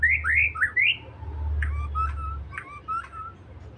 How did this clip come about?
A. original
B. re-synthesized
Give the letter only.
A